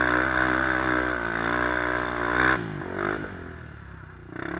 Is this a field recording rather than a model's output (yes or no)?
yes